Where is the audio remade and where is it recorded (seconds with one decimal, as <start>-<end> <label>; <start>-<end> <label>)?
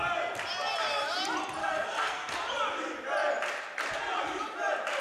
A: 0.0-1.6 recorded; 1.6-2.3 remade; 2.3-5.0 recorded